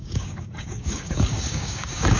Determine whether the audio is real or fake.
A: fake